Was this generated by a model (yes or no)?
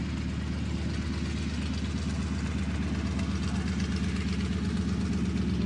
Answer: no